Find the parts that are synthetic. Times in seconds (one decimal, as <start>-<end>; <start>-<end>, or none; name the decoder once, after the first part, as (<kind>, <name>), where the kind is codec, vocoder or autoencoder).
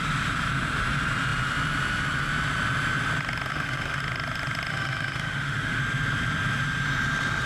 3.5-4.0 (autoencoder, DAC-VAE); 4.7-5.8